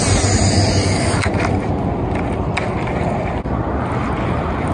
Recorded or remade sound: recorded